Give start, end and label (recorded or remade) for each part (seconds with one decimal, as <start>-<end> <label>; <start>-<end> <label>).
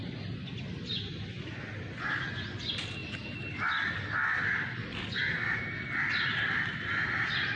0.0-7.6 recorded